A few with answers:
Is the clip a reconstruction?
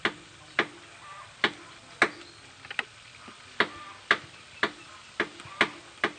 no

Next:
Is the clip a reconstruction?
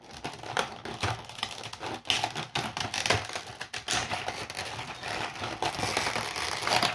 no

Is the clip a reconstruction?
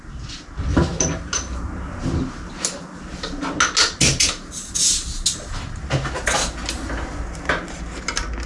no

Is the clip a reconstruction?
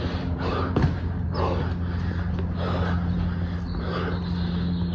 no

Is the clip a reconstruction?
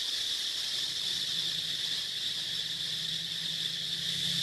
no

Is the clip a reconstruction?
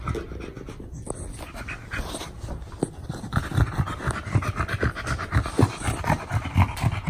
no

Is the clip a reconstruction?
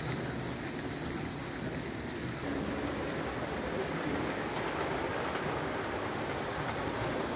no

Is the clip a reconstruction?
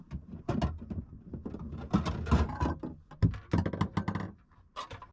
no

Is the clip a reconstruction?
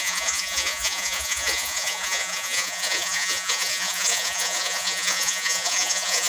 yes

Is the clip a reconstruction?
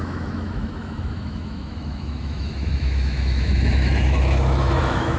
yes